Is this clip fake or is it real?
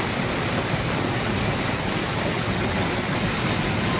real